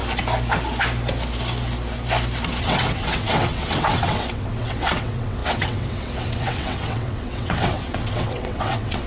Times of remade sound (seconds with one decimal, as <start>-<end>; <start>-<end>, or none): 2.6-9.1